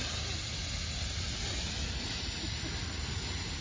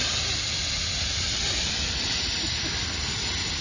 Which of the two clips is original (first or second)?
first